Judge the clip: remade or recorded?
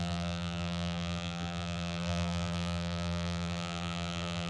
remade